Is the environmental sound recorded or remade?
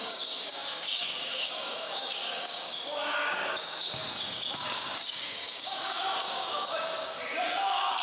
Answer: remade